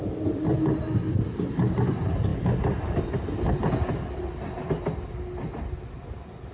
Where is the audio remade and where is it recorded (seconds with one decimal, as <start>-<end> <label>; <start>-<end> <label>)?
0.0-6.5 recorded